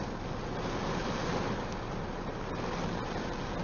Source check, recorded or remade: recorded